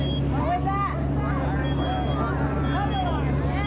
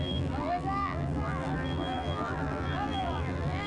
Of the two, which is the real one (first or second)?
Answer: first